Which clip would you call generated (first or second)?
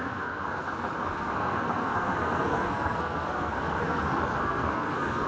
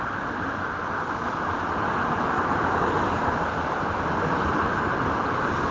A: first